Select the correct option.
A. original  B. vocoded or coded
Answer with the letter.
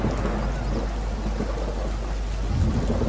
A